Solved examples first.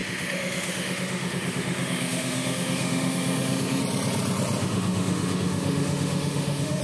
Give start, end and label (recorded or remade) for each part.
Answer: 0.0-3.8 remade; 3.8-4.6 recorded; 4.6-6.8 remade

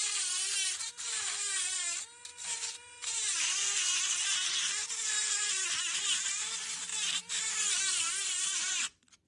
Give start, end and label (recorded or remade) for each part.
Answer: 0.0-6.9 remade; 6.9-7.4 recorded; 7.4-9.3 remade

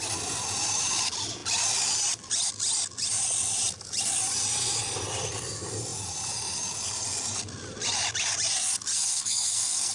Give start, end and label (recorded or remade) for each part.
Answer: 0.0-8.9 recorded; 8.9-9.9 remade

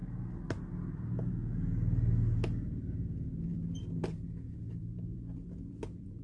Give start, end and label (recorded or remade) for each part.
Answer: 0.0-3.5 recorded; 3.5-6.2 remade

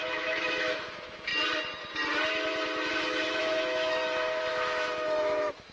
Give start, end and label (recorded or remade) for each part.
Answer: 0.0-1.3 remade; 1.3-2.9 recorded; 2.9-5.7 remade

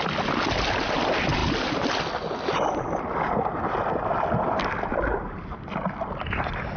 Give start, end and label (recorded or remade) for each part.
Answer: 0.0-6.8 recorded

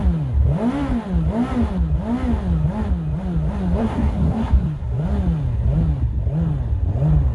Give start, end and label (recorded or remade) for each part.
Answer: 0.0-3.8 recorded; 3.8-5.0 remade; 5.0-7.3 recorded

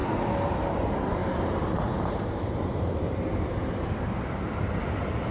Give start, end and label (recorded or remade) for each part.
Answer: 0.0-1.2 recorded; 1.2-4.3 remade; 4.3-5.3 recorded